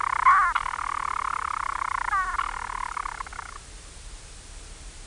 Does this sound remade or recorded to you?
recorded